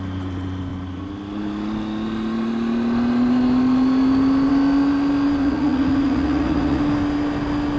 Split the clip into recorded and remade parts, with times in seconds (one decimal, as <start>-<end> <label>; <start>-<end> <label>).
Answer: 0.0-5.4 recorded; 5.4-6.8 remade; 6.8-7.8 recorded